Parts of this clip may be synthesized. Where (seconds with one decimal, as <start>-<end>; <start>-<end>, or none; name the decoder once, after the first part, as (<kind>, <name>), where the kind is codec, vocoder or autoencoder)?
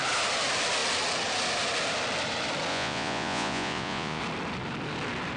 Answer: 2.7-4.2 (vocoder, Vocos)